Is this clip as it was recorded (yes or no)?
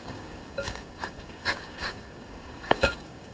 no